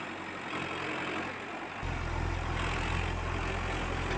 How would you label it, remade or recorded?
recorded